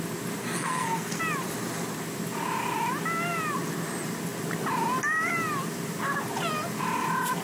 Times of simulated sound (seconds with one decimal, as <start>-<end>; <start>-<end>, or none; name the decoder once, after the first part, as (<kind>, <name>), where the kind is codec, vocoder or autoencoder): 0.4-1.2 (codec, SNAC)